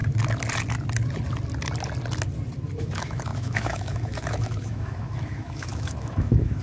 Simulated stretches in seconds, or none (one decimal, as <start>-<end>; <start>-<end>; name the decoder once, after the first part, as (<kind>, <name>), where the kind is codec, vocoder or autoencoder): 2.8-6.6 (autoencoder, DAC-VAE)